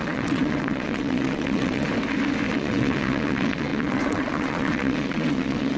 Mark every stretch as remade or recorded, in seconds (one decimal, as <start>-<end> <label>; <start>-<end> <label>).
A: 0.0-1.9 remade; 1.9-2.5 recorded; 2.5-5.8 remade